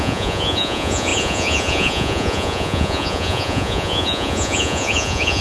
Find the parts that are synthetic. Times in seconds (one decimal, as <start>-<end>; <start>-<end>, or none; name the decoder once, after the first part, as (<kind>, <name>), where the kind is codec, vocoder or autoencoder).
0.0-5.4 (vocoder, Vocos)